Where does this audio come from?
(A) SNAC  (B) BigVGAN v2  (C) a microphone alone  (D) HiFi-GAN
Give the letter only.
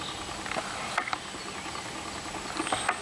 C